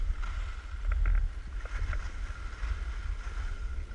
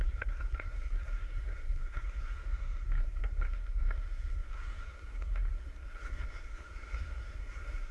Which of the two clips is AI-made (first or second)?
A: second